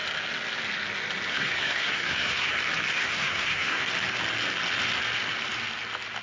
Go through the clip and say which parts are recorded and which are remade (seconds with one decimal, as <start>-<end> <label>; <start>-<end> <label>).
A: 0.0-1.3 recorded; 1.3-2.5 remade; 2.5-2.9 recorded; 2.9-3.9 remade; 3.9-6.2 recorded